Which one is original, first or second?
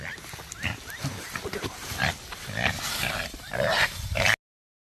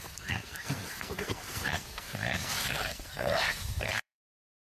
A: first